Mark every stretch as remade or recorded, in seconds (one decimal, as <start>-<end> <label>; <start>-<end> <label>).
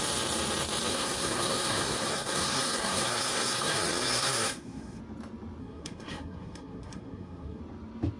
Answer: 0.0-0.9 recorded; 0.9-5.0 remade; 5.0-5.6 recorded; 5.6-7.6 remade; 7.6-8.2 recorded